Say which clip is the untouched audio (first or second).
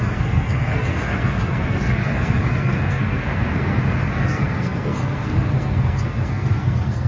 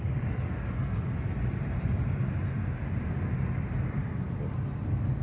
second